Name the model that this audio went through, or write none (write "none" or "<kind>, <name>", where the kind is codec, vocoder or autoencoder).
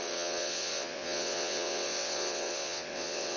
vocoder, WaveNeXt